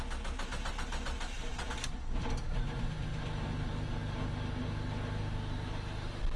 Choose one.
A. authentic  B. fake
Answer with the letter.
A